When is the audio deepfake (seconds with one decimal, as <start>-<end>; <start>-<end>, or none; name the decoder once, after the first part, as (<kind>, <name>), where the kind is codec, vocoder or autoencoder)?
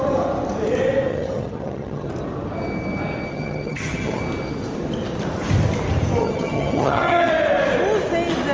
1.1-2.1 (vocoder, HiFi-GAN); 3.3-4.2; 6.2-7.3